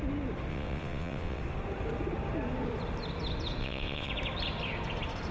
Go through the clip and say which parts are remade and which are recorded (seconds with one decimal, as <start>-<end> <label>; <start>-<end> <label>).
0.0-0.5 recorded; 0.5-1.4 remade; 1.4-3.6 recorded; 3.6-4.1 remade; 4.1-5.3 recorded